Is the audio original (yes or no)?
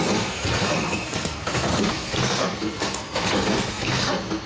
no